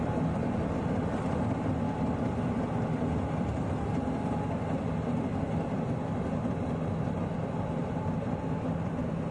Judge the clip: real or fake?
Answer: real